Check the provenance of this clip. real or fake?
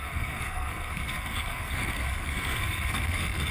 fake